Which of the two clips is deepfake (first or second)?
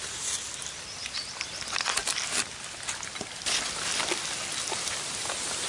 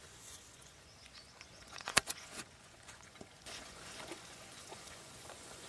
second